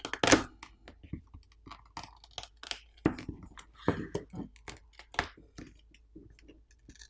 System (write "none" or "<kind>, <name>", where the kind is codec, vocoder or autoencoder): none